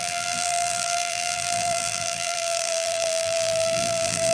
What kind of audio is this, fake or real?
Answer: fake